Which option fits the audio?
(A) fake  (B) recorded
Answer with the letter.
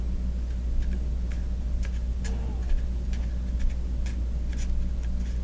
B